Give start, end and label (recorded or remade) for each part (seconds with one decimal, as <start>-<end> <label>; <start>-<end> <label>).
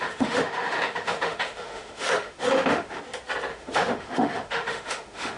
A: 0.0-3.0 remade; 3.0-3.5 recorded; 3.5-5.4 remade